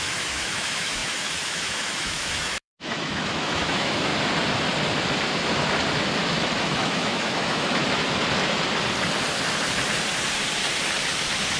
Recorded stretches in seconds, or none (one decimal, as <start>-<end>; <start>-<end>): 4.1-6.6; 7.8-11.6